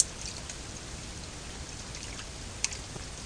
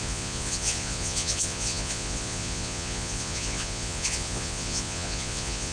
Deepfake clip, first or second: second